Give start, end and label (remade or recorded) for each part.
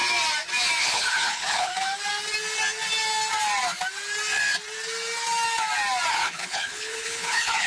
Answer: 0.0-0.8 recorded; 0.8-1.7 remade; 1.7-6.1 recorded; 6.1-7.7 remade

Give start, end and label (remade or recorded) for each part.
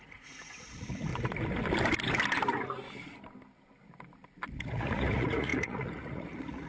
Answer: 0.0-1.1 remade; 1.1-4.6 recorded; 4.6-6.7 remade